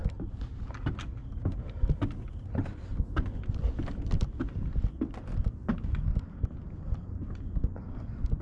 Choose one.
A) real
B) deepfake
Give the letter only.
A